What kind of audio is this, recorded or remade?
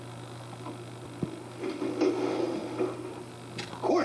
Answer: recorded